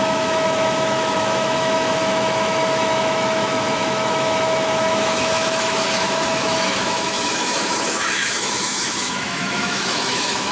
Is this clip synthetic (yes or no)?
yes